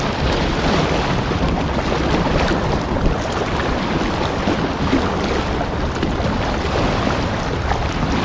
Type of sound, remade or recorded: recorded